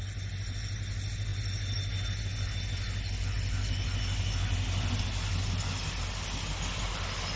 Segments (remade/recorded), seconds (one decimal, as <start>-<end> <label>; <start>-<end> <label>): 0.0-7.4 recorded